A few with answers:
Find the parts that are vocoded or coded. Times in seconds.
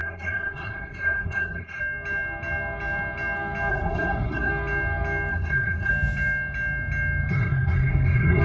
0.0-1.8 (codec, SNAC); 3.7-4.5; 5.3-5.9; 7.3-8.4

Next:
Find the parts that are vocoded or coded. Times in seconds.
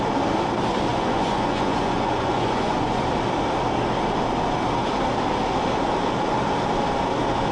0.9-3.0 (vocoder, Vocos)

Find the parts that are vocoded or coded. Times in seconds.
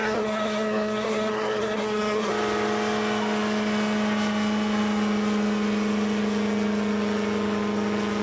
0.0-2.3 (codec, SNAC)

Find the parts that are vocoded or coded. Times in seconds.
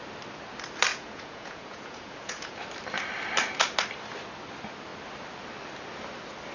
0.9-2.6 (vocoder, Vocos)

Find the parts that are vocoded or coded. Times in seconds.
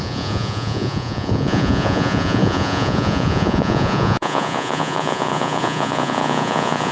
0.0-6.9 (vocoder, Vocos)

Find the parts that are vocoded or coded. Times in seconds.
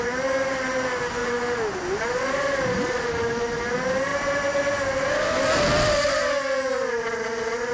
none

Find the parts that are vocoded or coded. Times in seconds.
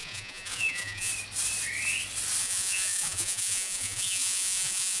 0.0-1.1 (vocoder, Vocos); 2.4-5.0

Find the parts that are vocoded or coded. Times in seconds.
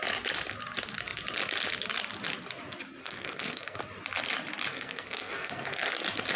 3.0-3.8 (codec, SNAC); 4.7-5.9